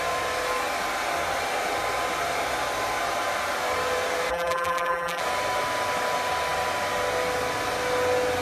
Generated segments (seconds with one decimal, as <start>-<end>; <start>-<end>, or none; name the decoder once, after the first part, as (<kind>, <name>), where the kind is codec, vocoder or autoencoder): 4.3-5.2 (vocoder, BigVGAN v2)